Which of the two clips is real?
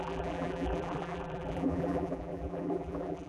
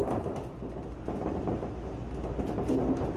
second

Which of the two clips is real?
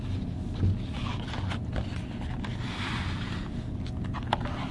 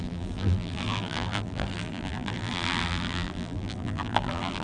first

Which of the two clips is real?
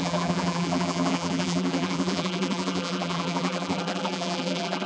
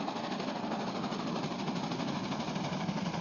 second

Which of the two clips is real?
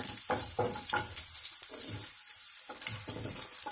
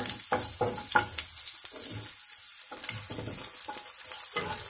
second